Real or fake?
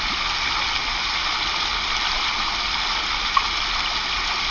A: real